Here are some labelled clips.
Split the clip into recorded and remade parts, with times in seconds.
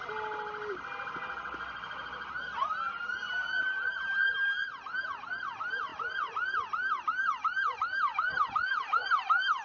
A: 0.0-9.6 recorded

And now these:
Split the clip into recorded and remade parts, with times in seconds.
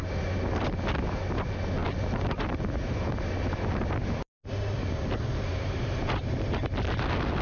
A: 0.0-7.4 recorded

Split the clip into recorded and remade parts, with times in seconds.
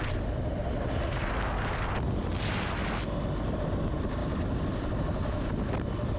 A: 0.0-6.2 recorded